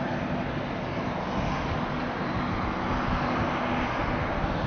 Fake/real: real